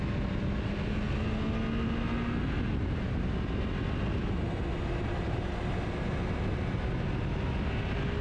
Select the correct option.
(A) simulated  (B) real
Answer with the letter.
B